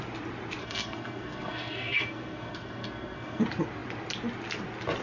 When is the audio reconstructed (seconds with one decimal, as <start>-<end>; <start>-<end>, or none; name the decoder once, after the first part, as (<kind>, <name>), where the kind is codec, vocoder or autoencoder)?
0.6-3.4 (codec, SNAC)